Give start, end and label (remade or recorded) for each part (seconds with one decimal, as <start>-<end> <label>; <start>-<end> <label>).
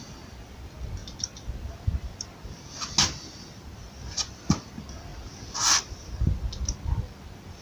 0.0-7.6 recorded